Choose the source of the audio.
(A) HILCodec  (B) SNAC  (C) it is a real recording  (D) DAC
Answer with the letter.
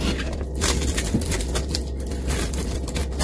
C